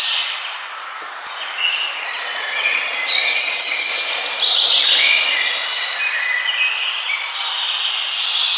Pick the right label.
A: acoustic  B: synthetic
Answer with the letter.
A